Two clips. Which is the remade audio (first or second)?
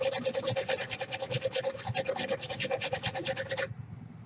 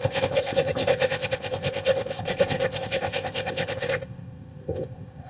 second